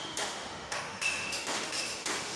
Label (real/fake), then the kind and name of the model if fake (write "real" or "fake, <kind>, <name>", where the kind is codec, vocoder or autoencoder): fake, autoencoder, DAC-VAE